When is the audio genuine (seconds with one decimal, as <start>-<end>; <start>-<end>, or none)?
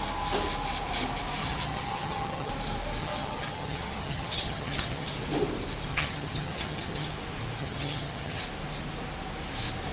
0.0-1.4; 2.5-3.0; 5.1-5.9; 7.1-7.6; 8.4-9.9